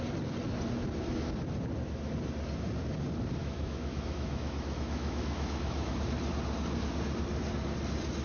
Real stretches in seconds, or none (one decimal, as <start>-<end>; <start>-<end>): 0.0-3.4; 5.9-8.2